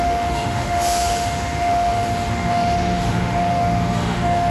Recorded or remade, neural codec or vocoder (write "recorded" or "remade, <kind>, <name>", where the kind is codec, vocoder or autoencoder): remade, autoencoder, DAC-VAE